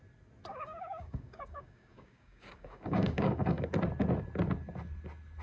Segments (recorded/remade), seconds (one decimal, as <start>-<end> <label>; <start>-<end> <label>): 0.0-0.5 recorded; 0.5-3.7 remade; 3.7-5.4 recorded